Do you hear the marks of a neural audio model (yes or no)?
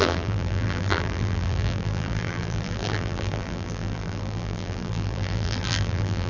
yes